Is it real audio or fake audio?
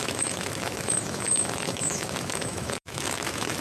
fake